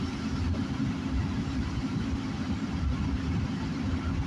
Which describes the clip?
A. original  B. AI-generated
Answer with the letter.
A